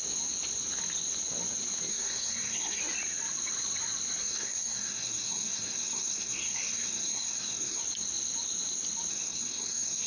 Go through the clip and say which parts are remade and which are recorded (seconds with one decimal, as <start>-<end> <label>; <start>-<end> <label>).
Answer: 0.0-1.9 recorded; 1.9-2.8 remade; 2.8-4.2 recorded; 4.2-7.8 remade; 7.8-9.1 recorded; 9.1-10.1 remade